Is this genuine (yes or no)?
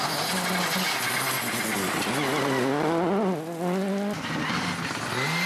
yes